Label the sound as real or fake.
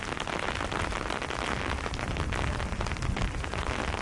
real